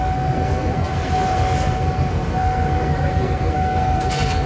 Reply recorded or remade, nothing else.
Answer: remade